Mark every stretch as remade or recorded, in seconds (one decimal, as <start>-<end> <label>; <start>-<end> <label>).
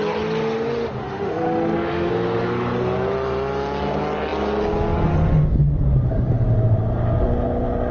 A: 0.0-1.0 recorded; 1.0-2.1 remade; 2.1-7.9 recorded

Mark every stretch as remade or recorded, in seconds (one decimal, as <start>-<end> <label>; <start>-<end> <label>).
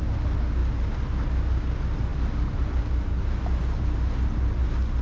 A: 0.0-5.0 recorded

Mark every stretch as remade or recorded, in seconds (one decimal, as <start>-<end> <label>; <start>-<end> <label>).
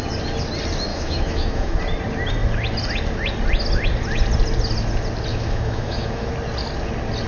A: 0.0-0.9 recorded; 0.9-1.8 remade; 1.8-5.3 recorded; 5.3-6.3 remade; 6.3-7.3 recorded